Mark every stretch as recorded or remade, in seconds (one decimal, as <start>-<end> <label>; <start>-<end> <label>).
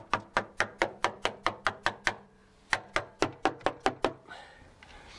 0.0-5.2 recorded